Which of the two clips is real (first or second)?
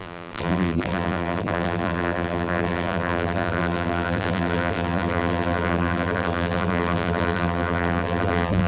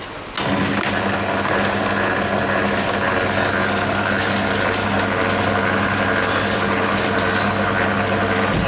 second